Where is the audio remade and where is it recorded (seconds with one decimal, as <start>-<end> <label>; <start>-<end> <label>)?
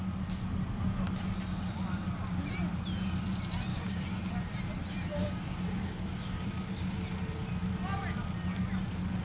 0.0-3.7 recorded; 3.7-4.3 remade; 4.3-5.2 recorded; 5.2-6.7 remade; 6.7-9.2 recorded